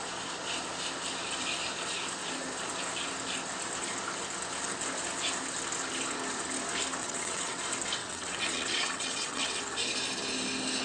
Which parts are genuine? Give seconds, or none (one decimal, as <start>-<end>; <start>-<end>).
0.0-7.0; 7.6-8.0; 9.6-10.8